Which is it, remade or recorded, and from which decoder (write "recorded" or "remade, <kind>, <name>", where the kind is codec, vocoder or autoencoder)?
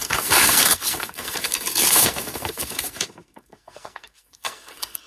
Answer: remade, codec, SNAC